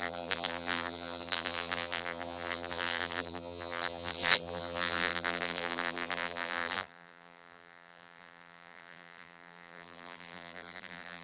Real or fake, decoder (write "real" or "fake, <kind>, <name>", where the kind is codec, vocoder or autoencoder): fake, vocoder, BigVGAN v2